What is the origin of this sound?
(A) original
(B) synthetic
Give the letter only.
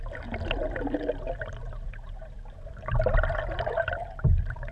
A